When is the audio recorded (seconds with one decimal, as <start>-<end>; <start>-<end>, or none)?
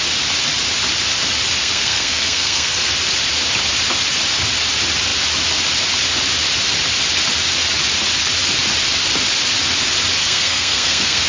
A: 0.0-1.6; 2.9-10.2